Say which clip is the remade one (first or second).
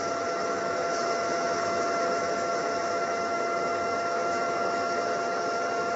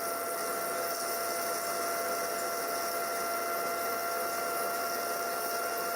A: first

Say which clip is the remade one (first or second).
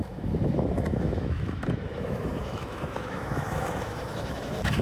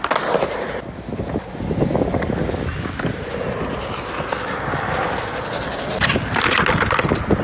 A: first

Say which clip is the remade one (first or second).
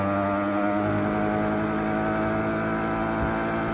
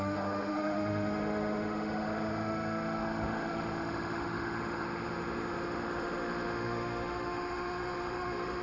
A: second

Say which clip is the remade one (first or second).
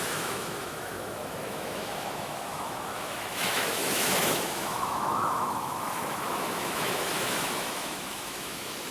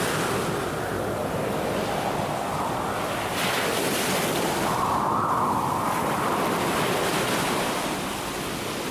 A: first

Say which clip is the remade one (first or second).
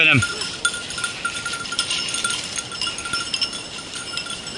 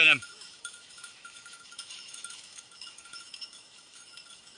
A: second